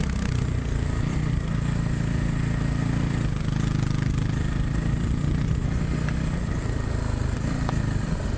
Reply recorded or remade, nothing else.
recorded